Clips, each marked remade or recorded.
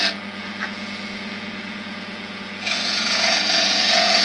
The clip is remade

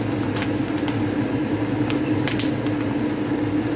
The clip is recorded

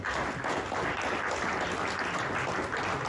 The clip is recorded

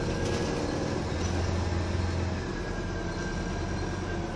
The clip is recorded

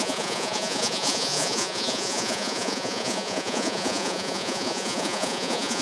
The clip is remade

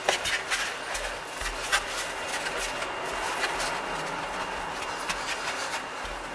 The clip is recorded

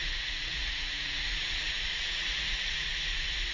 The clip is remade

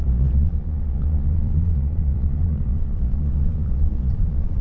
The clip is remade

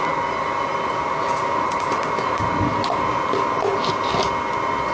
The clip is recorded